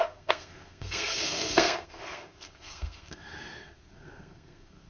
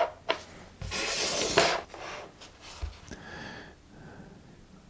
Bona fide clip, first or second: second